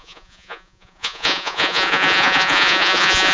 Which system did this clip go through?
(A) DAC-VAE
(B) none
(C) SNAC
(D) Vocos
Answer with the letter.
D